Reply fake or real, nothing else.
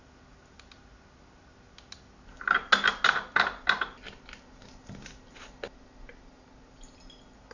real